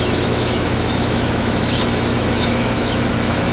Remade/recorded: remade